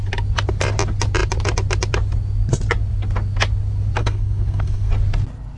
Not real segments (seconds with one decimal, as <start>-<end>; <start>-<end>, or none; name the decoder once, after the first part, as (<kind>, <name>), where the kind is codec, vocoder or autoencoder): 4.0-4.9 (codec, SNAC)